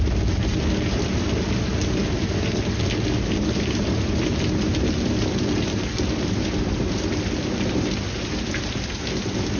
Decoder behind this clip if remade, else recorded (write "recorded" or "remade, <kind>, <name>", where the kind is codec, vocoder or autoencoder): recorded